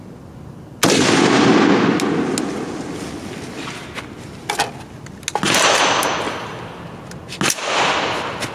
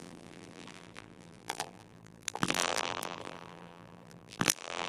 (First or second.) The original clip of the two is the first